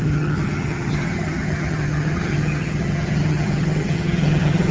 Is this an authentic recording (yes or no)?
no